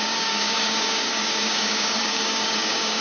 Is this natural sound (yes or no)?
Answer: no